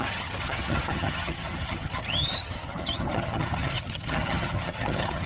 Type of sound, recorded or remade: remade